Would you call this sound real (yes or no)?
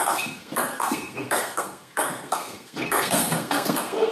no